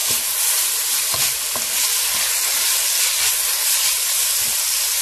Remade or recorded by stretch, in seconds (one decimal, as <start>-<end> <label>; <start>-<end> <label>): 0.0-5.0 recorded